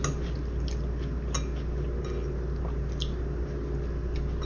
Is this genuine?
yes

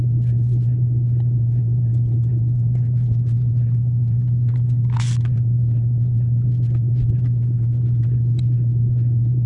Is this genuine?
yes